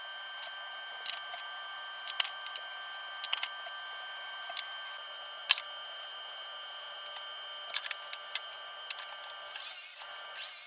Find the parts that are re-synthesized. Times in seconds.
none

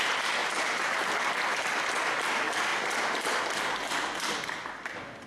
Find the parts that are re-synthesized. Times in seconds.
0.4-1.0 (vocoder, BigVGAN v2)

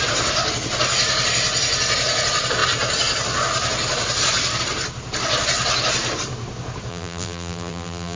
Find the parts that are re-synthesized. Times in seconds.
6.9-8.2 (vocoder, BigVGAN v2)

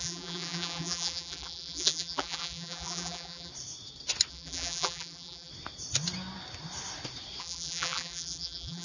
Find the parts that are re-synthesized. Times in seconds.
0.0-3.5 (vocoder, BigVGAN v2); 4.3-5.5; 7.4-8.8

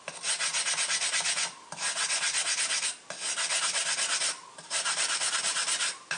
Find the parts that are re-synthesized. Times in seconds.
none

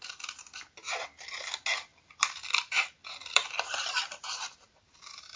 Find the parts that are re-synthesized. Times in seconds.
1.9-5.4 (vocoder, BigVGAN v2)

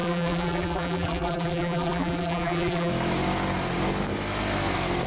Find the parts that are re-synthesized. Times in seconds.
0.0-2.9 (vocoder, BigVGAN v2)

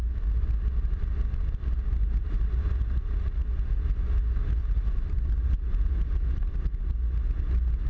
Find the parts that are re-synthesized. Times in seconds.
2.0-2.6 (vocoder, BigVGAN v2); 4.6-6.6